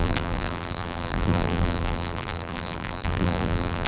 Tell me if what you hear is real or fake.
fake